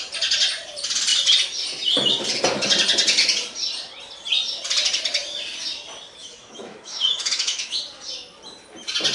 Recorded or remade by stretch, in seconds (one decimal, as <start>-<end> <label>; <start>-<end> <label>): 0.0-6.2 recorded; 6.2-7.8 remade; 7.8-9.1 recorded